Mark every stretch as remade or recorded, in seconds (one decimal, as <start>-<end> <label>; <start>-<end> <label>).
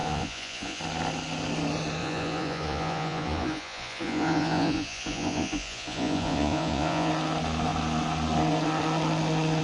0.0-0.8 remade; 0.8-2.0 recorded; 2.0-7.1 remade; 7.1-9.6 recorded